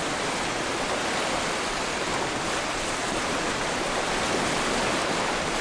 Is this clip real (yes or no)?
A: yes